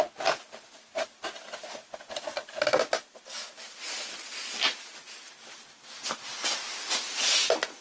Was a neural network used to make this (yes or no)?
no